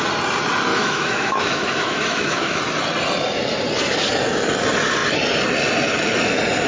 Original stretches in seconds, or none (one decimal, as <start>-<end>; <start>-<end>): 0.0-0.7; 2.6-6.7